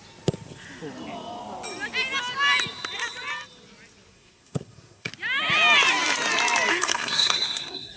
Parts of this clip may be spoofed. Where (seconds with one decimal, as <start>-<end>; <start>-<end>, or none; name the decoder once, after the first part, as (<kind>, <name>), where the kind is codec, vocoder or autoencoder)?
4.1-5.1 (codec, SNAC); 6.7-8.0